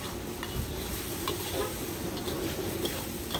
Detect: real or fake real